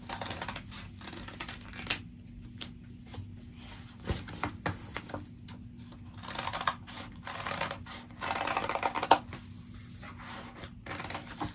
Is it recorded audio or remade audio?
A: recorded